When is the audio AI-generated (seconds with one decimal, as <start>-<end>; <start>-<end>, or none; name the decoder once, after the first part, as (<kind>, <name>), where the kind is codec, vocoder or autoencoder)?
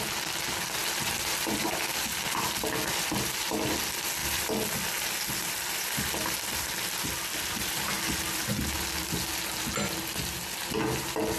0.8-3.3 (vocoder, BigVGAN v2); 4.2-8.4